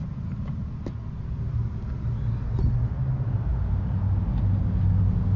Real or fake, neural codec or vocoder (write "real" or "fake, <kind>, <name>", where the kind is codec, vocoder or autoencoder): real